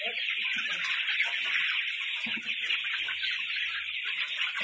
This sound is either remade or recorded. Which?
remade